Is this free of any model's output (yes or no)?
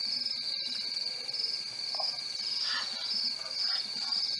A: yes